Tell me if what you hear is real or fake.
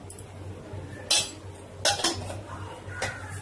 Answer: real